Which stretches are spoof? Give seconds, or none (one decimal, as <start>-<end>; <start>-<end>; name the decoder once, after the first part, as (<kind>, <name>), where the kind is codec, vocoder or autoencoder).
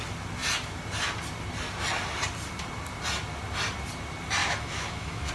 4.4-5.3 (autoencoder, DAC-VAE)